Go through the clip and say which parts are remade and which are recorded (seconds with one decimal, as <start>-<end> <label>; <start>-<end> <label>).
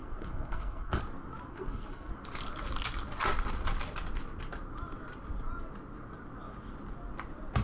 0.0-1.0 remade; 1.0-1.5 recorded; 1.5-2.1 remade; 2.1-7.6 recorded